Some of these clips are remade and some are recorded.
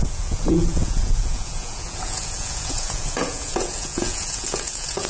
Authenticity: remade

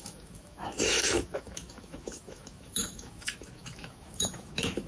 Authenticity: remade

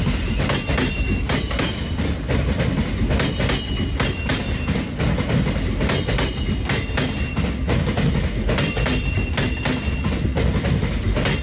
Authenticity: recorded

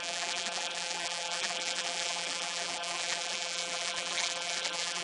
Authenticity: remade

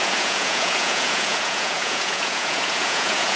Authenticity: remade